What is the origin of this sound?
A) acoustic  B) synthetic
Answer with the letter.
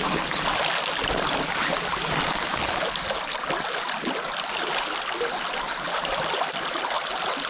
A